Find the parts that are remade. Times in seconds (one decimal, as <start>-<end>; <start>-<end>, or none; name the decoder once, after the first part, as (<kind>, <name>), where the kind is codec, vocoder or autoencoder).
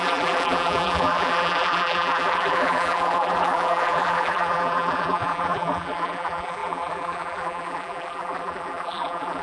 0.0-9.4 (vocoder, BigVGAN v2)